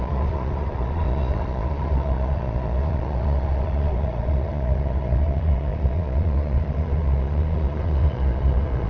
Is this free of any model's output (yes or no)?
no